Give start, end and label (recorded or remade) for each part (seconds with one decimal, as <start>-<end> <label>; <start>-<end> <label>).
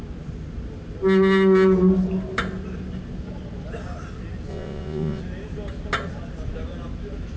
0.0-4.5 recorded; 4.5-5.2 remade; 5.2-7.4 recorded